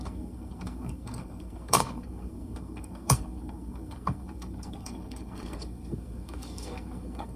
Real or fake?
fake